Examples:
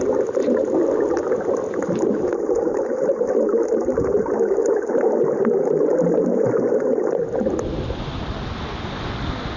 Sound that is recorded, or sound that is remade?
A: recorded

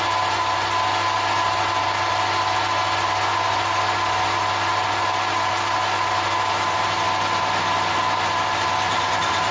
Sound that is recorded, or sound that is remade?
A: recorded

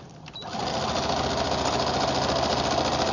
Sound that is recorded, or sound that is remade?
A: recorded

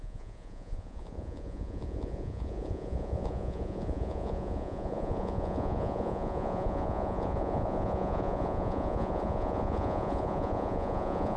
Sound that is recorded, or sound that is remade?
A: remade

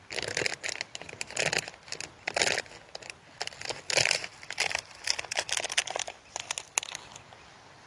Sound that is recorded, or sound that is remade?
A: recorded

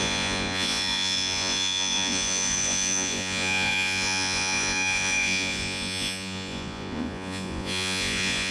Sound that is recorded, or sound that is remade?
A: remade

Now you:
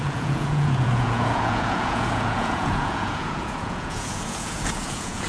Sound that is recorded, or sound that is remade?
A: remade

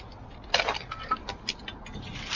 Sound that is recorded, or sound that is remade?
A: recorded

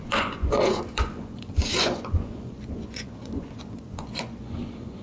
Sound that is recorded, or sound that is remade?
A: remade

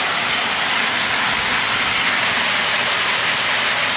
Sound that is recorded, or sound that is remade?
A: recorded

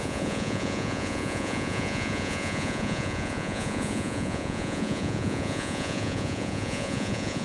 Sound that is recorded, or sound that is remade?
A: remade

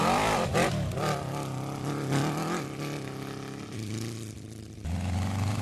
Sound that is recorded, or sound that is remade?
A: recorded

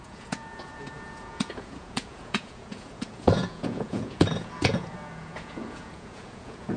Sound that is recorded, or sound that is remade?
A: remade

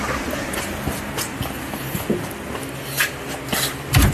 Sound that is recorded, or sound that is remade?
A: recorded